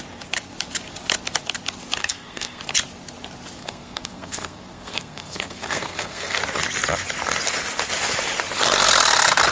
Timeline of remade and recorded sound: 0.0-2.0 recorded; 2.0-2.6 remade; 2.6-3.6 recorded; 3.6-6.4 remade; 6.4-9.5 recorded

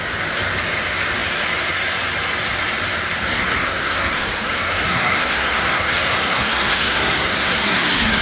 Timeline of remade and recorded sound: 0.0-3.3 recorded; 3.3-8.2 remade

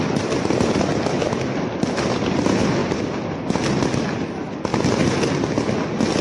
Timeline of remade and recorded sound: 0.0-6.2 recorded